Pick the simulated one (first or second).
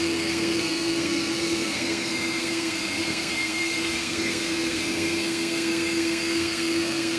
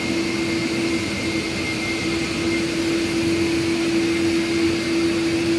first